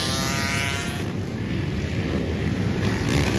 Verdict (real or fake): fake